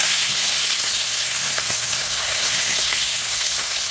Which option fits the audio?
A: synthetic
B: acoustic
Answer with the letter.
A